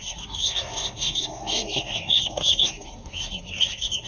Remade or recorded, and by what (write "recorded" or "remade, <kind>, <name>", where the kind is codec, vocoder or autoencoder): remade, codec, SNAC